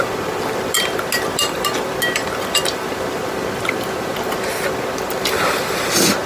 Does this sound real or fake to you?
real